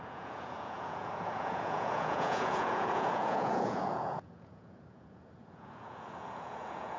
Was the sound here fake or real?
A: fake